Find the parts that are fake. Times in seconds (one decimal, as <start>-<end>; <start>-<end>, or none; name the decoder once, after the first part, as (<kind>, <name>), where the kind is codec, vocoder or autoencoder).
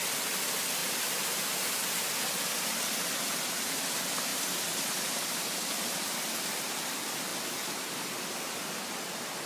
0.8-2.2 (vocoder, BigVGAN v2); 4.3-6.3